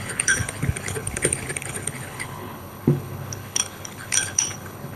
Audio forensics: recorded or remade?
remade